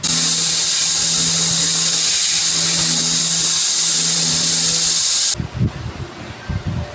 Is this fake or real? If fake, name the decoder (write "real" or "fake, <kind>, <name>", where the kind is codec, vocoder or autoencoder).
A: real